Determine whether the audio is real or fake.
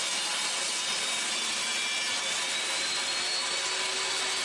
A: real